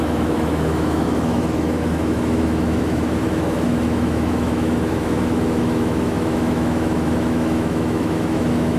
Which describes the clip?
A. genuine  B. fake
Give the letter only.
B